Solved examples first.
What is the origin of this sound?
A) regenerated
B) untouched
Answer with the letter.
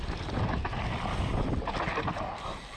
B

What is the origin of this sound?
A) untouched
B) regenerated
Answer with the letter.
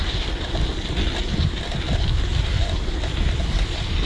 A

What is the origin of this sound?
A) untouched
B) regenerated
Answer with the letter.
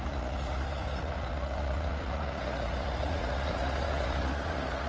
B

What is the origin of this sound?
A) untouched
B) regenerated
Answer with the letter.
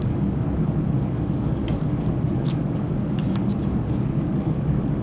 B